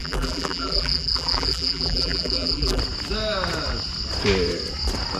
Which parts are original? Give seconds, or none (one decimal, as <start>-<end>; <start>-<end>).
2.8-5.2